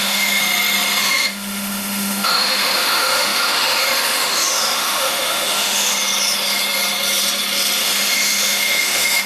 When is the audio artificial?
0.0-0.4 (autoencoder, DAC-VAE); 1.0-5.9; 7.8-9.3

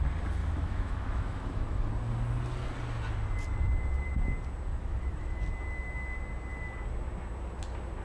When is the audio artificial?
0.4-1.9 (autoencoder, DAC-VAE); 4.7-5.4

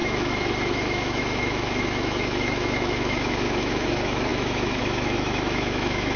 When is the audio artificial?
0.0-6.2 (autoencoder, DAC-VAE)